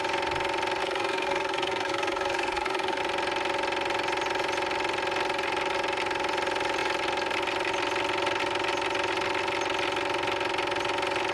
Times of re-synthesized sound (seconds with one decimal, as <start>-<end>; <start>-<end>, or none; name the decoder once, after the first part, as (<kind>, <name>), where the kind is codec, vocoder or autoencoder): 0.8-3.0 (codec, SNAC)